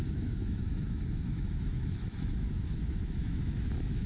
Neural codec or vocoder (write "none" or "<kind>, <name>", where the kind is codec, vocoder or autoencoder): autoencoder, DAC-VAE